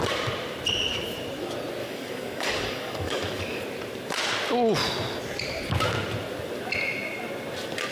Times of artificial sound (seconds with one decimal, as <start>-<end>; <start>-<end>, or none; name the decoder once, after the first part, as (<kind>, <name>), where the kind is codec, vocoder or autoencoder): 1.8-3.6 (codec, DAC)

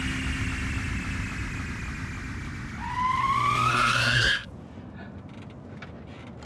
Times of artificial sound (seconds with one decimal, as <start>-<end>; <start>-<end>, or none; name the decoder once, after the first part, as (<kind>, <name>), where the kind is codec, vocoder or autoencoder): 3.7-4.5 (codec, SNAC)

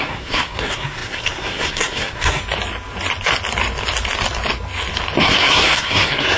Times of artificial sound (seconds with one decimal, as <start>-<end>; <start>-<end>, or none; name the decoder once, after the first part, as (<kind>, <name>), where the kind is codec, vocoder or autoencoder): 0.0-2.4 (codec, SNAC); 5.2-6.4

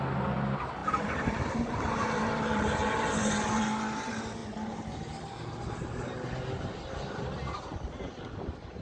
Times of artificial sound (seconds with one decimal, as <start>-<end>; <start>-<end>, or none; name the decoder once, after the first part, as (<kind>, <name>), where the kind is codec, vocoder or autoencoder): 0.8-3.7 (vocoder, BigVGAN v2)

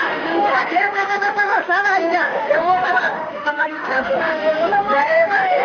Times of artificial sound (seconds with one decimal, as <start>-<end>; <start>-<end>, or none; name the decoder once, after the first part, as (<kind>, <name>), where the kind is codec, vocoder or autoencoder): 0.0-5.6 (autoencoder, DAC-VAE)

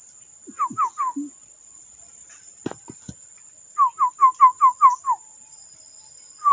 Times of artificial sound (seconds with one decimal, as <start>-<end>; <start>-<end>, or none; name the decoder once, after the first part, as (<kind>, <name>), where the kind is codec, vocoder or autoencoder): 1.4-2.1 (vocoder, Vocos)

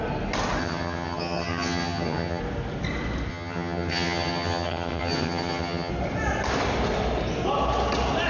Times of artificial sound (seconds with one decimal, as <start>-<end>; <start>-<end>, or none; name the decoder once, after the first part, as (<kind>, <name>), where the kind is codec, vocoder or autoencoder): 0.6-2.4 (vocoder, HiFi-GAN); 3.3-5.9

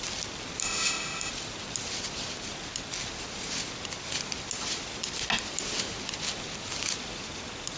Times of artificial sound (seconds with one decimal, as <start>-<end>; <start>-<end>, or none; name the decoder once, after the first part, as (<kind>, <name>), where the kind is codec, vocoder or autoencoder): 0.6-1.3 (autoencoder, DAC-VAE)